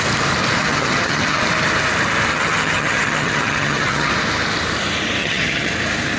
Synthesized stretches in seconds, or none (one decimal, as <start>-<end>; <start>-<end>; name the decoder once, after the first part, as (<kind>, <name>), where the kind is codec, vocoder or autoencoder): 0.6-1.4 (vocoder, HiFi-GAN); 2.3-4.1; 5.2-5.7